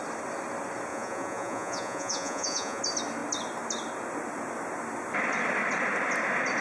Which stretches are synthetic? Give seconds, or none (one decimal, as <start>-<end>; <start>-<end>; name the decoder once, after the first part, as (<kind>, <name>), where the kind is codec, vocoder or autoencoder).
0.9-2.8 (vocoder, Vocos)